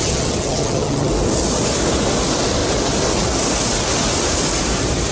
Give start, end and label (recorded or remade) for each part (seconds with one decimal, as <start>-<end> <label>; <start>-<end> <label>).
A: 0.0-1.1 remade; 1.1-5.1 recorded

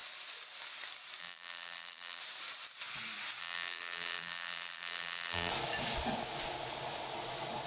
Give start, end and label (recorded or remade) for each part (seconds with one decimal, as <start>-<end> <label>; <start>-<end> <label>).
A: 0.0-1.2 recorded; 1.2-2.2 remade; 2.2-3.4 recorded; 3.4-5.5 remade; 5.5-7.7 recorded

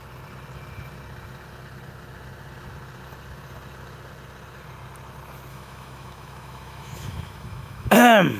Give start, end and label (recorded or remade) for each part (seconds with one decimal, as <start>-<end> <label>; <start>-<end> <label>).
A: 0.0-5.5 recorded; 5.5-8.4 remade